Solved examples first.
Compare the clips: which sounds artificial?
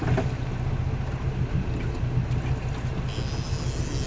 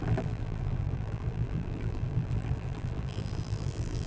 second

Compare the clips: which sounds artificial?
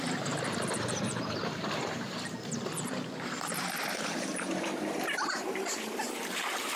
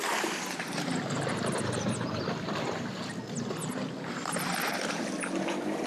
first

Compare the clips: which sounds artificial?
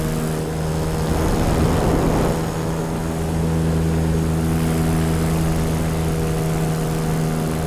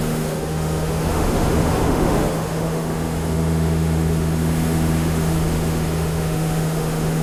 second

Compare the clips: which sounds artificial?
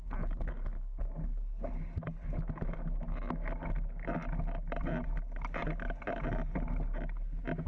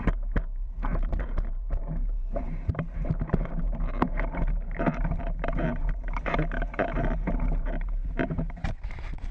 second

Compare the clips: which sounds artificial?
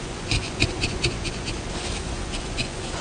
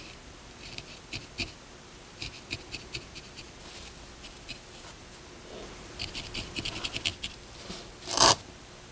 first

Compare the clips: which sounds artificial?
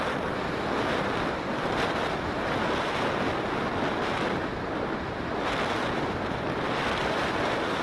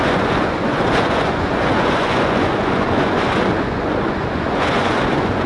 second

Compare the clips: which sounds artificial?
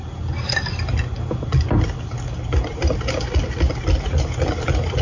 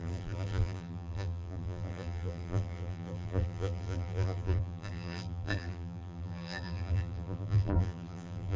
second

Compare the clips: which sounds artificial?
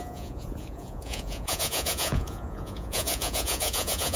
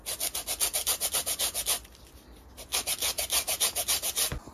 first